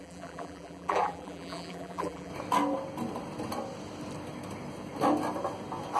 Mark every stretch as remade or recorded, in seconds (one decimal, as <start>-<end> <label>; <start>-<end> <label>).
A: 0.0-2.3 remade; 2.3-6.0 recorded